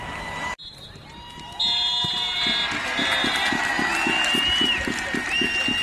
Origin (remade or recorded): recorded